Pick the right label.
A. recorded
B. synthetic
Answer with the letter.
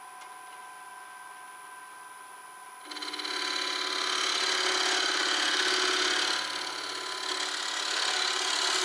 A